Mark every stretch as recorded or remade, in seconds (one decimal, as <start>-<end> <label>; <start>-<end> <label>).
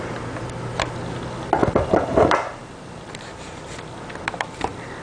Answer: 0.0-5.0 recorded